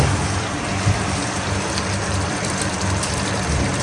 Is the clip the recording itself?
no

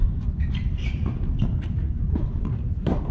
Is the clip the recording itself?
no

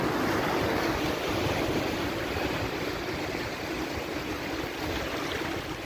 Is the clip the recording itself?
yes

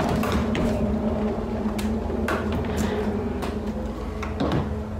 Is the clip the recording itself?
yes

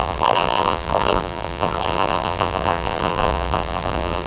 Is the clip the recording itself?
no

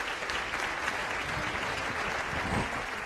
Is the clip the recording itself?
yes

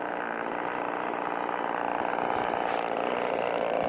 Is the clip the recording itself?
yes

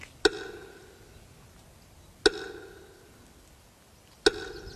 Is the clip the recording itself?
yes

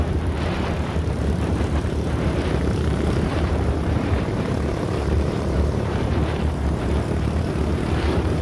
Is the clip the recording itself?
no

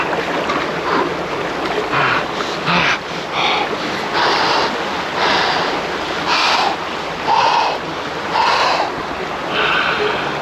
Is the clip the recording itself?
yes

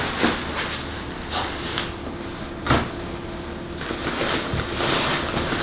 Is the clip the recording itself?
yes